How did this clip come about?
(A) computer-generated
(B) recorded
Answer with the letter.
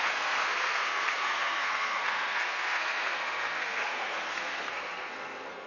A